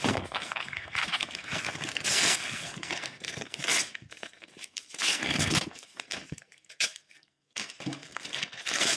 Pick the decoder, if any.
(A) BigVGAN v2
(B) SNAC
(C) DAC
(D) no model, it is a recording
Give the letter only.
B